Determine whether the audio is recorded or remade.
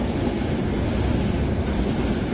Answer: recorded